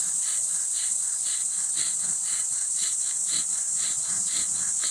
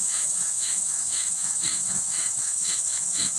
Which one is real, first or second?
first